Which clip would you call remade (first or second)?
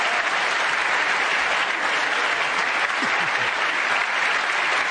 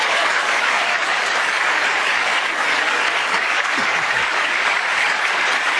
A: second